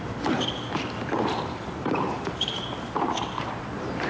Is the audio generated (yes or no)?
yes